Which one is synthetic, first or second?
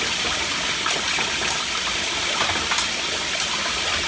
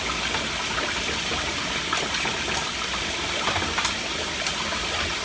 first